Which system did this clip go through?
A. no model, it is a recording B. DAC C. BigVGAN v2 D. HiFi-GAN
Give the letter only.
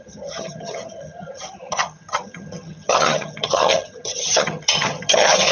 D